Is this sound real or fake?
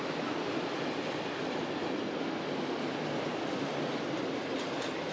real